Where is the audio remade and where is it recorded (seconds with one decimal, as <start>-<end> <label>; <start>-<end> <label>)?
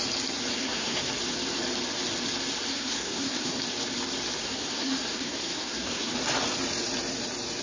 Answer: 0.0-0.6 recorded; 0.6-1.1 remade; 1.1-2.7 recorded; 2.7-3.6 remade; 3.6-4.4 recorded; 4.4-6.1 remade; 6.1-7.6 recorded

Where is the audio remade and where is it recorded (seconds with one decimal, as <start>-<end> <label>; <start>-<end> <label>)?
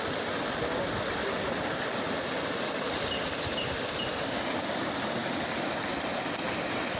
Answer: 0.0-7.0 recorded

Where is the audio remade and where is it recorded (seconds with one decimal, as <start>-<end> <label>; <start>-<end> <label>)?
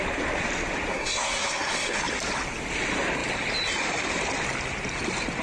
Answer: 0.0-0.9 recorded; 0.9-2.0 remade; 2.0-5.4 recorded